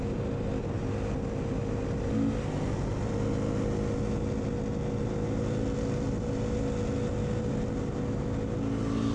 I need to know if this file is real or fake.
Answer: real